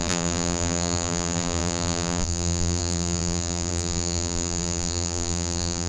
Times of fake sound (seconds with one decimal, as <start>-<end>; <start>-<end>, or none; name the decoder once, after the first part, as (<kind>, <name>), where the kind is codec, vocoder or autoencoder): 0.0-5.9 (vocoder, BigVGAN v2)

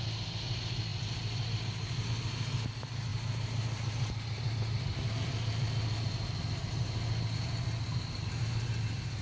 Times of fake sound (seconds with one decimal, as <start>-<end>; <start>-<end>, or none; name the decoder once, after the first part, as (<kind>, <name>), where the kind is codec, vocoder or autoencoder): none

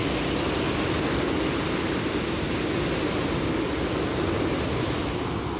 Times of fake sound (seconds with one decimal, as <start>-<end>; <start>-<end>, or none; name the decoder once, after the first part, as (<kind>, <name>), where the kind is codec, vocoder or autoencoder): none

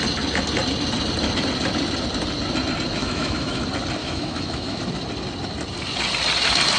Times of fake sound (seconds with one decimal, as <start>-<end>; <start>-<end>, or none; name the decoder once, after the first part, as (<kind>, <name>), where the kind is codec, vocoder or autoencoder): 3.0-3.6 (autoencoder, DAC-VAE); 4.0-4.8